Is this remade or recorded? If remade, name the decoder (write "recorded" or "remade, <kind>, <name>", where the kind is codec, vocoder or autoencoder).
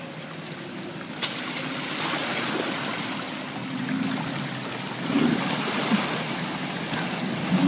recorded